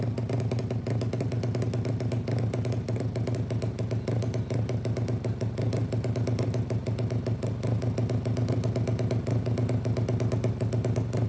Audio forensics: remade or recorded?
recorded